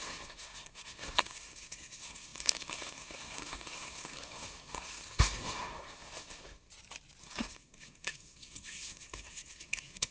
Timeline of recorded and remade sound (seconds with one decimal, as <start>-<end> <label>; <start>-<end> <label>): 0.0-6.7 remade; 6.7-7.2 recorded; 7.2-10.1 remade